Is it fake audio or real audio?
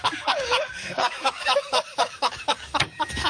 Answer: fake